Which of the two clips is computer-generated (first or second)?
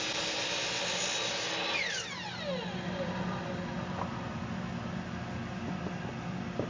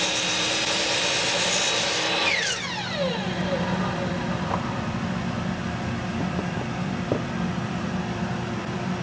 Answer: second